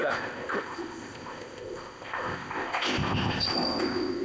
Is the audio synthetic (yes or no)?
yes